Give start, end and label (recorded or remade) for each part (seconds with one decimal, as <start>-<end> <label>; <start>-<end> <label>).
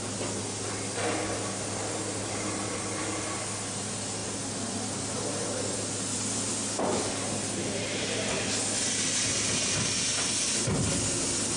0.0-11.6 recorded